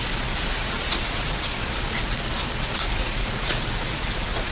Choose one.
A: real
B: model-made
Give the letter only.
B